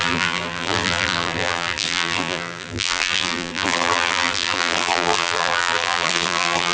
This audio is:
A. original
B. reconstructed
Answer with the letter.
B